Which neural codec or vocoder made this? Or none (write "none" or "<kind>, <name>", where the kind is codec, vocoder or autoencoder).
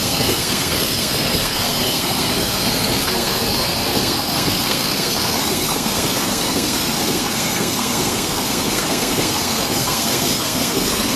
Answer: codec, SNAC